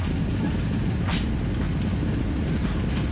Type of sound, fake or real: real